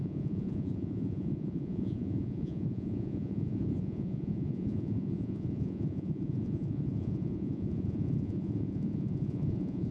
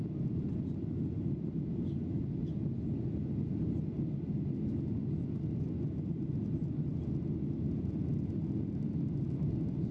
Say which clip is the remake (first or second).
first